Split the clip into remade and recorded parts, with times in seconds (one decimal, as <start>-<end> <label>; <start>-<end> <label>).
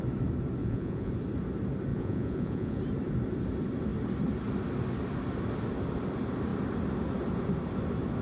0.0-0.6 recorded; 0.6-1.1 remade; 1.1-1.9 recorded; 1.9-2.8 remade; 2.8-8.2 recorded